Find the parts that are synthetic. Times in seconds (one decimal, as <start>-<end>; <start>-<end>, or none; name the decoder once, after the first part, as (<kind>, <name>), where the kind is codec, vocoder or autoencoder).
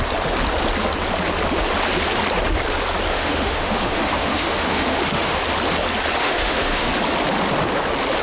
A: 3.1-5.4 (autoencoder, DAC-VAE); 6.2-6.9